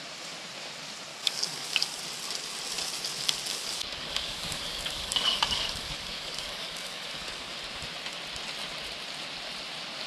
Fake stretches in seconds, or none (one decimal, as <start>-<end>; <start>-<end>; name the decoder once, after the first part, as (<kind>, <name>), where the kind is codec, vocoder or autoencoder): 1.1-2.0 (codec, DAC); 3.5-7.5